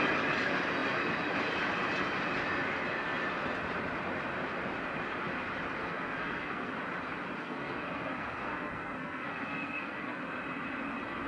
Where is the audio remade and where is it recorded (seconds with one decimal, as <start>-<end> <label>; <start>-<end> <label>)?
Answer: 0.0-5.8 recorded; 5.8-6.7 remade; 6.7-7.4 recorded; 7.4-10.2 remade; 10.2-11.3 recorded